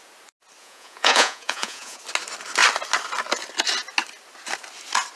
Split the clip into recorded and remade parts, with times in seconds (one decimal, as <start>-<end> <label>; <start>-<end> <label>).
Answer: 0.0-0.6 recorded; 0.6-2.0 remade; 2.0-5.2 recorded